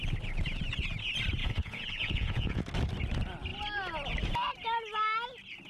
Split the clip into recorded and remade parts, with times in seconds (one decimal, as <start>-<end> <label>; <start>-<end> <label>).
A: 0.0-1.4 recorded; 1.4-2.6 remade; 2.6-5.7 recorded